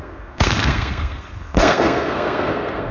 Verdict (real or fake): fake